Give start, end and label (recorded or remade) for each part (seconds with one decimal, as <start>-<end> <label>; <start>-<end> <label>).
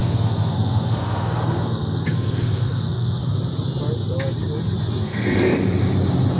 0.0-3.2 remade; 3.2-5.0 recorded; 5.0-5.5 remade; 5.5-6.4 recorded